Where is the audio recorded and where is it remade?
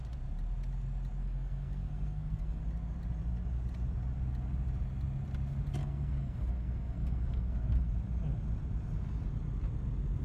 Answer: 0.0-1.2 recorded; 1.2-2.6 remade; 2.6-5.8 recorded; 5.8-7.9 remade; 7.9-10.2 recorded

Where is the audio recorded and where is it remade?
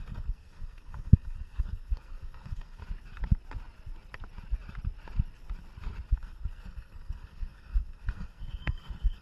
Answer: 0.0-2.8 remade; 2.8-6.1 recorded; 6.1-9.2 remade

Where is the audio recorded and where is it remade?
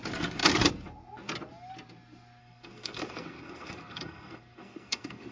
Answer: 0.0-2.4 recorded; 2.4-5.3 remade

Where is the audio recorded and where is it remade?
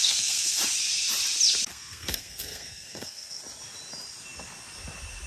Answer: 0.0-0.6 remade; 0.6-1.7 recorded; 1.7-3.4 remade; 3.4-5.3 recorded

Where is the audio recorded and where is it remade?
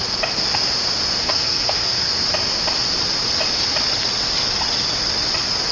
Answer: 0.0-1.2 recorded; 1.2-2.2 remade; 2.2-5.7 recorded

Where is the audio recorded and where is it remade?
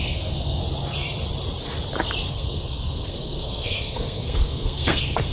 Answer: 0.0-0.6 remade; 0.6-2.3 recorded; 2.3-5.3 remade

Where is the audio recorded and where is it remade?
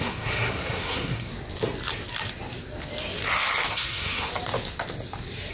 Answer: 0.0-1.3 remade; 1.3-3.7 recorded; 3.7-4.3 remade; 4.3-5.5 recorded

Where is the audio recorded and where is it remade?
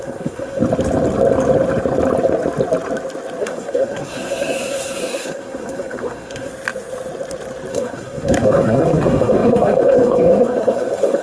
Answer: 0.0-0.6 remade; 0.6-3.4 recorded; 3.4-6.5 remade; 6.5-7.7 recorded; 7.7-11.2 remade